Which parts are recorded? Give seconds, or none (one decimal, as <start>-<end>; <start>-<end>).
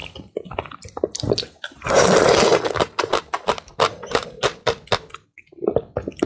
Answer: 0.0-2.5; 4.7-6.3